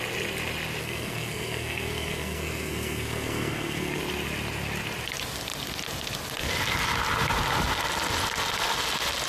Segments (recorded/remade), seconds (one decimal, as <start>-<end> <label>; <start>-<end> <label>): 0.0-0.8 recorded; 0.8-4.0 remade; 4.0-9.3 recorded